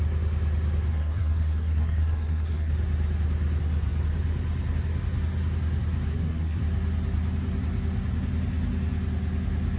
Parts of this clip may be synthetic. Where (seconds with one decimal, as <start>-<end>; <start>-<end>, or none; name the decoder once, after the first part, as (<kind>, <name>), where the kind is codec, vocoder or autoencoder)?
0.9-2.7 (codec, SNAC); 6.1-6.6